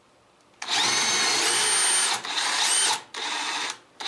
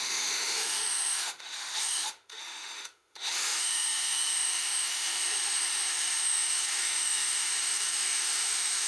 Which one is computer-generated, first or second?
second